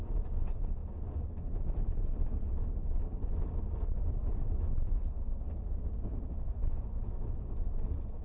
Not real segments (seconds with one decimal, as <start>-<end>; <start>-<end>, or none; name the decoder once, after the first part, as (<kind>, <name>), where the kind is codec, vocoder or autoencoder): 6.1-7.4 (autoencoder, DAC-VAE)